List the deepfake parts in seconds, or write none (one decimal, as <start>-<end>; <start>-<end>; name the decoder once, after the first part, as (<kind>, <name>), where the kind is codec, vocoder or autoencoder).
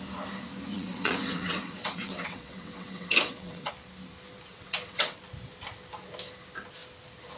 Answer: 0.7-3.7 (vocoder, WaveNeXt); 4.5-5.2